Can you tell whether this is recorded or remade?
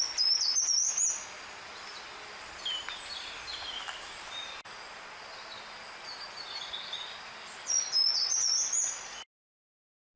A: recorded